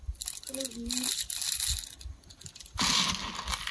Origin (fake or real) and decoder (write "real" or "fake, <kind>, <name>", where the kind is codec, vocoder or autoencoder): real